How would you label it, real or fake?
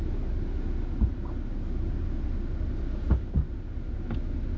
real